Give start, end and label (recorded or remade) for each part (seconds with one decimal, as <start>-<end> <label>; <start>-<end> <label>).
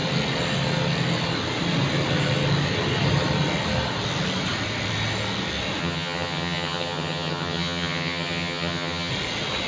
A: 0.0-5.8 recorded; 5.8-9.1 remade; 9.1-9.7 recorded